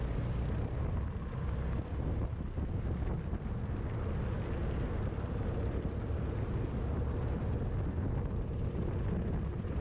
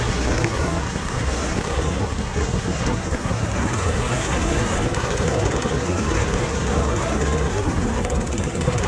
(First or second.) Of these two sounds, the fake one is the second